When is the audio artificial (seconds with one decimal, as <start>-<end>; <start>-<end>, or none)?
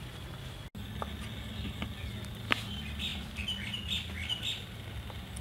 none